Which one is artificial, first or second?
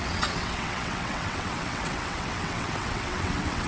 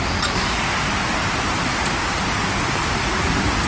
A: first